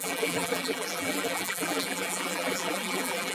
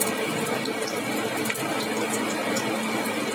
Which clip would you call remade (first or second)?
first